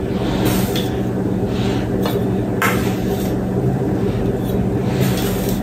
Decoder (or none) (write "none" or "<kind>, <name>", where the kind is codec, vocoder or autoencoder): none